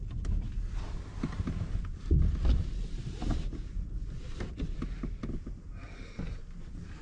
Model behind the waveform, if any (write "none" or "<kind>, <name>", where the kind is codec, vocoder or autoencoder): none